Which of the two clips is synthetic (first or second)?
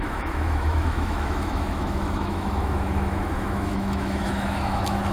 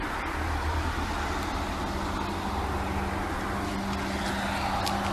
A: first